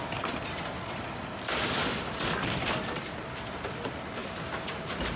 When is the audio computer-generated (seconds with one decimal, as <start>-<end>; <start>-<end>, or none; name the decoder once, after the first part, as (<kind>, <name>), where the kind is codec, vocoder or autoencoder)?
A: none